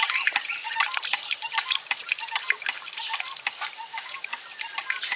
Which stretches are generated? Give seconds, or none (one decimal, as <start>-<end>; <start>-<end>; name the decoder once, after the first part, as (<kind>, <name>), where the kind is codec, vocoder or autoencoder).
3.9-4.4 (codec, DAC)